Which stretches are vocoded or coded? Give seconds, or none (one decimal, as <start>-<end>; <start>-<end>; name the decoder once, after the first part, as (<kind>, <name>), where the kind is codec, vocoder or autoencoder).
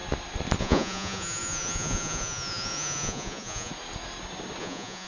0.6-3.7 (vocoder, Vocos); 4.6-5.1